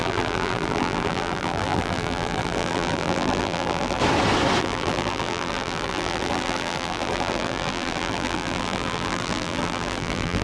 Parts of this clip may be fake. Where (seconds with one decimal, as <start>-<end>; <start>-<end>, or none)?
0.0-4.0; 4.6-10.4